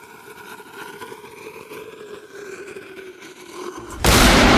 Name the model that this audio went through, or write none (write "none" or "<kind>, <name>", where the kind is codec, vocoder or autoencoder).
vocoder, BigVGAN v2